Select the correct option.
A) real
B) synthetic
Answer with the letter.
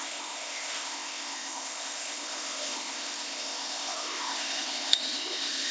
B